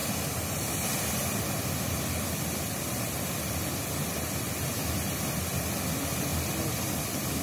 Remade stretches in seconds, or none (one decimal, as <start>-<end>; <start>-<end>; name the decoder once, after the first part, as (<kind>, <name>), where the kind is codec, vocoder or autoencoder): none